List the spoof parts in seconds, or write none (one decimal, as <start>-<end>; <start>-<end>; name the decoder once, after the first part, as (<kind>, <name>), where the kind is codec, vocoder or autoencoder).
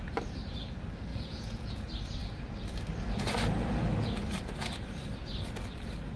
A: 1.1-1.8 (vocoder, Vocos)